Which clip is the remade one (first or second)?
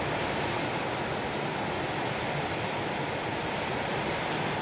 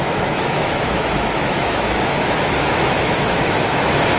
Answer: second